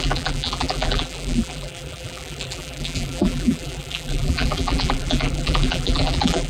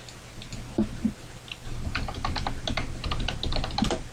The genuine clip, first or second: second